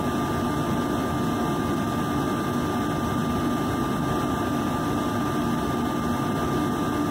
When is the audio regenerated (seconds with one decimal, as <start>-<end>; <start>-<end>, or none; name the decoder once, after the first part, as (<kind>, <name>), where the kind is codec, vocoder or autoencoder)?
none